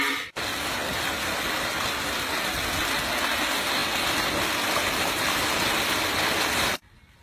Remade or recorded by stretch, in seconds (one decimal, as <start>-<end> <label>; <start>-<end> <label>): 0.0-7.2 recorded

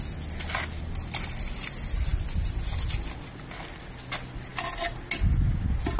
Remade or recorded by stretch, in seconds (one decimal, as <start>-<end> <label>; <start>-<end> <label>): 0.0-6.0 recorded

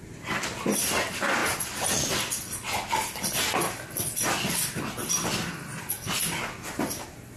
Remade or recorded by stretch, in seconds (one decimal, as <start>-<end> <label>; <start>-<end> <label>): 0.0-7.4 recorded

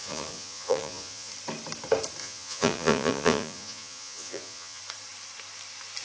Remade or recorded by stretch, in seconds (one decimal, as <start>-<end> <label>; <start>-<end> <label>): 0.0-1.3 remade; 1.3-2.2 recorded; 2.2-4.8 remade; 4.8-6.0 recorded

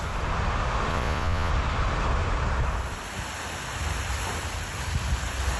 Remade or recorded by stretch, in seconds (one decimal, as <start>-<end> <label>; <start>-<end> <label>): 0.0-0.9 recorded; 0.9-1.5 remade; 1.5-5.6 recorded

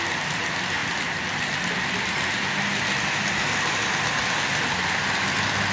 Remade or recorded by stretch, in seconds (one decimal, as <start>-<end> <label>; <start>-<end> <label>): 0.0-5.7 recorded